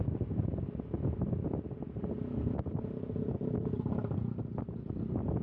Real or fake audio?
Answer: real